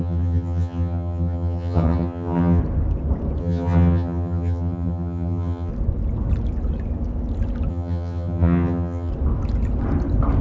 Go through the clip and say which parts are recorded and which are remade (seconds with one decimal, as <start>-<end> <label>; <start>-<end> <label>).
0.0-2.6 remade; 2.6-3.4 recorded; 3.4-5.7 remade; 5.7-7.7 recorded; 7.7-9.1 remade; 9.1-10.4 recorded